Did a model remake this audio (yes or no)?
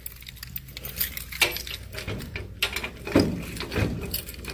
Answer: no